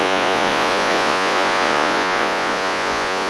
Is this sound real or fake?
fake